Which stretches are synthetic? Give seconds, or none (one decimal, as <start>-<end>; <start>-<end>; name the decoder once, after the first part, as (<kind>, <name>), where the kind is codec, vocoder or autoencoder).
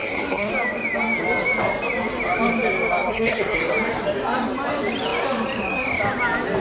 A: 0.0-0.5 (codec, SNAC); 3.1-3.7